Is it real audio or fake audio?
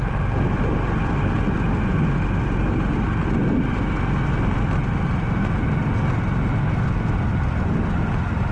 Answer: real